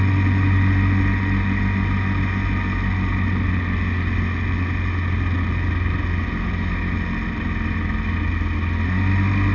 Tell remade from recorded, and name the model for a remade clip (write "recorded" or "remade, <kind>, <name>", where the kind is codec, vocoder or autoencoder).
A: recorded